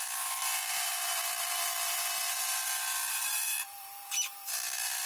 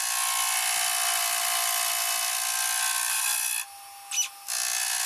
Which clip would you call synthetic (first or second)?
first